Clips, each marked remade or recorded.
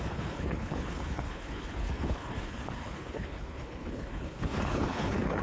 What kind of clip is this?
remade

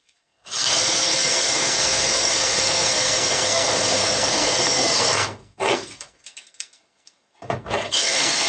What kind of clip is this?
remade